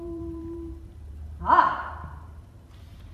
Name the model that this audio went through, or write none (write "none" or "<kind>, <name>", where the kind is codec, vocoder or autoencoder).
vocoder, BigVGAN v2